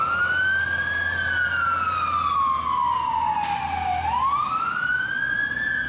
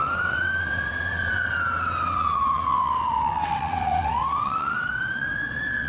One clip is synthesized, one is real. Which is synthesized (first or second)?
second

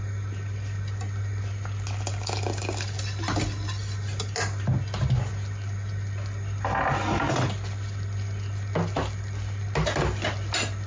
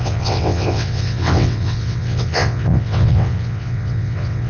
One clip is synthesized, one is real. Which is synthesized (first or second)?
second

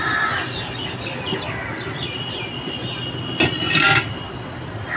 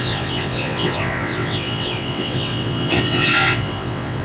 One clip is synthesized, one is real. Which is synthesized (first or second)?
second